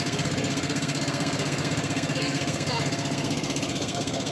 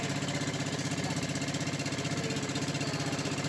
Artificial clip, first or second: first